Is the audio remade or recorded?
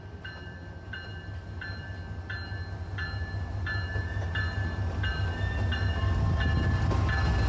recorded